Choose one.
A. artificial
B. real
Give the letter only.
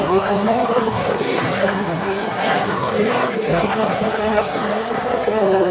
A